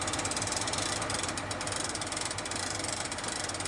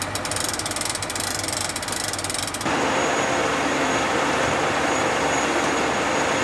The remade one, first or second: first